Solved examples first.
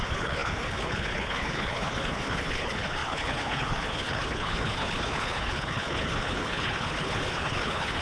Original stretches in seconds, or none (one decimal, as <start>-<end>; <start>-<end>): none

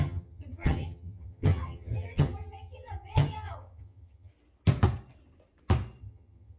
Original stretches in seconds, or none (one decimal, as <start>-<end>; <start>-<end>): 4.3-6.0

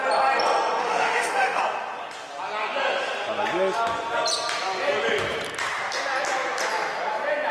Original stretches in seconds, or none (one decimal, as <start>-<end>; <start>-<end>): 0.0-0.8; 1.6-7.5

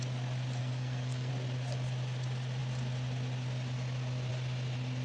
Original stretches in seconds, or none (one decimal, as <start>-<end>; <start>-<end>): 0.0-0.6; 1.3-5.0

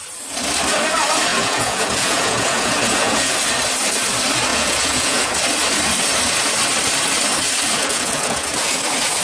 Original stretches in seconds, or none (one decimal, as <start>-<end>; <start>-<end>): 0.0-1.3; 3.3-4.5; 5.3-7.8; 8.7-9.2

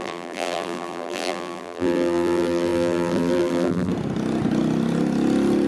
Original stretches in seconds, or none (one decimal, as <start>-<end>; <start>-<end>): 3.9-5.7